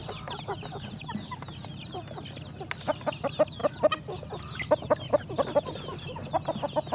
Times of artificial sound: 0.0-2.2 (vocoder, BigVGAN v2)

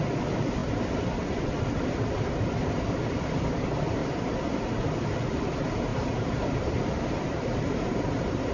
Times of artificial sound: 5.9-8.1 (vocoder, BigVGAN v2)

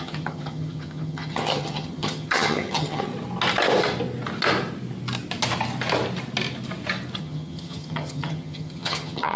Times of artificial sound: 0.0-3.1 (vocoder, HiFi-GAN); 7.2-9.4

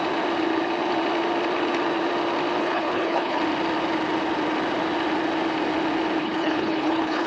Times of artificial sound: 2.6-3.4 (codec, HILCodec); 6.2-7.3

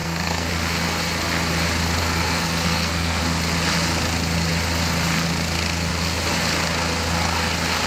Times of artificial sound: 0.0-0.5 (codec, SNAC); 2.0-3.2